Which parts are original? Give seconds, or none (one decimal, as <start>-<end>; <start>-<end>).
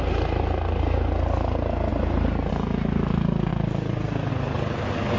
0.0-1.9; 2.5-3.5; 4.3-5.2